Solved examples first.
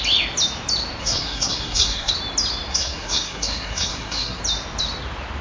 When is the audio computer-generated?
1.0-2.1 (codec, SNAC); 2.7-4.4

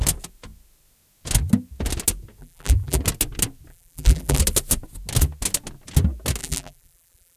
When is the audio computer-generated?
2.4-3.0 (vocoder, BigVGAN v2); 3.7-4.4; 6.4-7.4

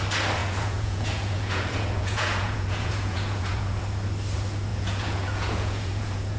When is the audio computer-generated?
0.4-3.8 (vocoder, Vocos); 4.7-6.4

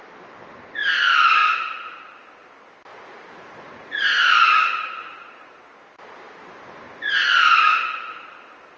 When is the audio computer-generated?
2.9-5.5 (vocoder, Vocos)

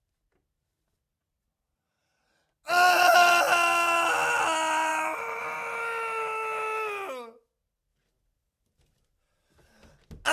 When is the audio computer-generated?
4.9-5.4 (vocoder, BigVGAN v2)